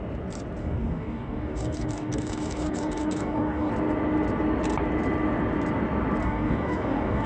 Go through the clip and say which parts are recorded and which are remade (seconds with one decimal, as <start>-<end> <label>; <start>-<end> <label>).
0.0-0.6 recorded; 0.6-3.7 remade; 3.7-6.2 recorded; 6.2-7.3 remade